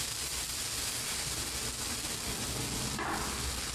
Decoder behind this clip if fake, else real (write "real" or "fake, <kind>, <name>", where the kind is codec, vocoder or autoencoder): real